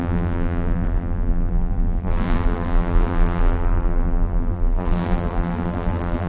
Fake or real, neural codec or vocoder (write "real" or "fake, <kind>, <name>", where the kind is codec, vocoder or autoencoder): fake, vocoder, BigVGAN v2